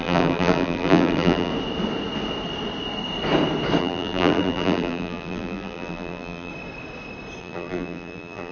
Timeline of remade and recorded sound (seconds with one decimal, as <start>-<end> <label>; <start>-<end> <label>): 0.0-1.5 remade; 1.5-3.8 recorded; 3.8-6.5 remade; 6.5-7.4 recorded; 7.4-8.5 remade